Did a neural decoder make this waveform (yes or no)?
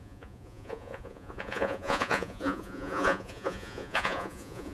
yes